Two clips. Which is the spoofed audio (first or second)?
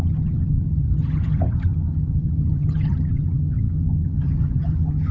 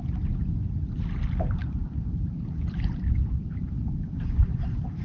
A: first